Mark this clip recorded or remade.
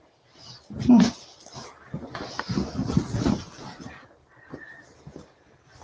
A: recorded